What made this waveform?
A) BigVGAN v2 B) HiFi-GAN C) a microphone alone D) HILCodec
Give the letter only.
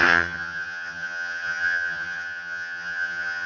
B